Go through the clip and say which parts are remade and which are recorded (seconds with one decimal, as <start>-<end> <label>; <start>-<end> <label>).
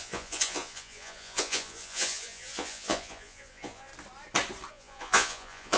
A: 0.0-3.9 remade; 3.9-4.7 recorded; 4.7-5.8 remade